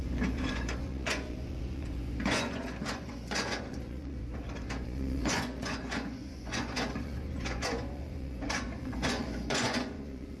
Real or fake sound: fake